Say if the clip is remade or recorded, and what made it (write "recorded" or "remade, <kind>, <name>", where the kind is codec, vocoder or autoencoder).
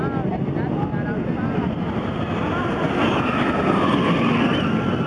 recorded